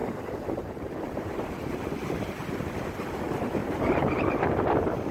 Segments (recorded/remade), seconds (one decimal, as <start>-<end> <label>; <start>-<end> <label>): 0.0-3.1 remade; 3.1-3.6 recorded; 3.6-4.4 remade; 4.4-5.1 recorded